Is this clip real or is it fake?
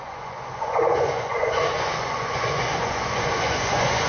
fake